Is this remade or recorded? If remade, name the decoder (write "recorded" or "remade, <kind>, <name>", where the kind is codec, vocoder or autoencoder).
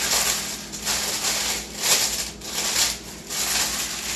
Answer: recorded